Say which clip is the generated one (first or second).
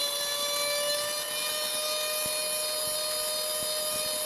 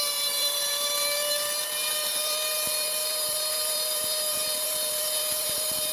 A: second